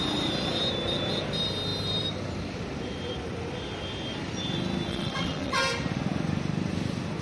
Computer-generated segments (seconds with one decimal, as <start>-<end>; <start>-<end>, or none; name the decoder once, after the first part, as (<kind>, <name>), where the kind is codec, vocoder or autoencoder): 4.9-5.6 (vocoder, WaveNeXt)